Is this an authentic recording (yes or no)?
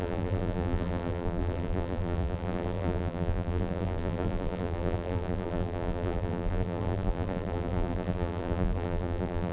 no